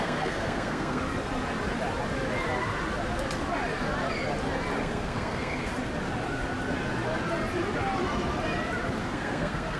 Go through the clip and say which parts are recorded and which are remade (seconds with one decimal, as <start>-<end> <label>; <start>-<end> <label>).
0.0-1.0 remade; 1.0-4.8 recorded; 4.8-5.7 remade; 5.7-9.0 recorded; 9.0-9.8 remade